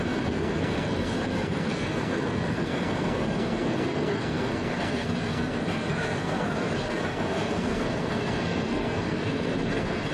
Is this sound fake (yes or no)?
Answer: yes